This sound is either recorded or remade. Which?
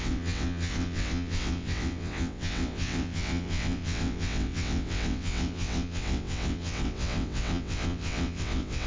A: remade